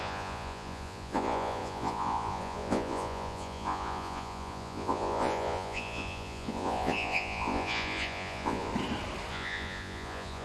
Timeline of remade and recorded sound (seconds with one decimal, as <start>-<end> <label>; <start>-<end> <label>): 0.0-8.7 remade; 8.7-9.3 recorded; 9.3-10.4 remade